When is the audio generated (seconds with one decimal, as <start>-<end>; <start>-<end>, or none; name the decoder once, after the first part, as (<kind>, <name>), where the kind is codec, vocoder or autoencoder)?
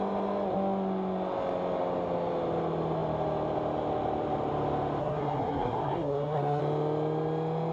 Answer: 5.0-6.6 (codec, SNAC)